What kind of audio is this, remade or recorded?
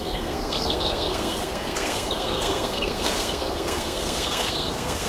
remade